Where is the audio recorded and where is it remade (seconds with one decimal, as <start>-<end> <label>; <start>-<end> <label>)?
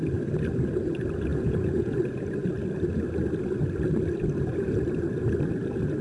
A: 0.0-1.3 recorded; 1.3-2.0 remade; 2.0-6.0 recorded